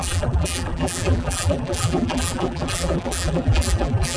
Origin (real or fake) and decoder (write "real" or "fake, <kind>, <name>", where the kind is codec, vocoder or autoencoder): fake, vocoder, BigVGAN v2